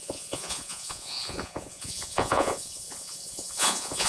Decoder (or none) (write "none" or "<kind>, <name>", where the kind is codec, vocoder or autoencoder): vocoder, Vocos